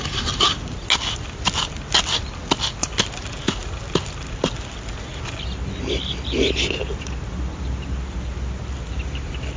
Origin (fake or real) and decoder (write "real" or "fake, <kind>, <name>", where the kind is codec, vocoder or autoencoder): real